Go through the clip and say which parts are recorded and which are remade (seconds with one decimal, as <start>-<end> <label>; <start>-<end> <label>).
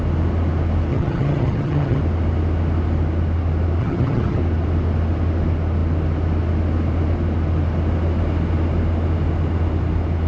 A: 0.0-0.9 recorded; 0.9-2.0 remade; 2.0-3.8 recorded; 3.8-4.4 remade; 4.4-10.3 recorded